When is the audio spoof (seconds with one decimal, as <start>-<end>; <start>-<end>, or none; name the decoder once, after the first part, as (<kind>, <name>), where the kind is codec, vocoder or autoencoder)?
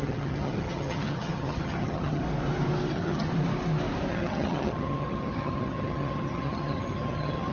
0.0-2.2 (vocoder, HiFi-GAN); 2.9-3.3; 4.1-7.5